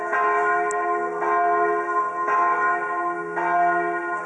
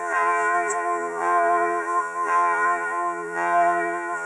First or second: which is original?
first